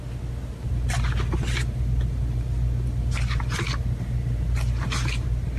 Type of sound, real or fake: real